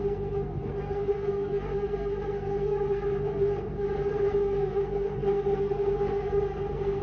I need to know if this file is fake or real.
fake